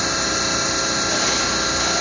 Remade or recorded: recorded